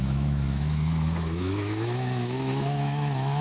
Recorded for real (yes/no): no